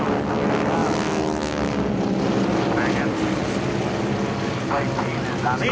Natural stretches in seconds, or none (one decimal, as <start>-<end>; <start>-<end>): 0.0-5.7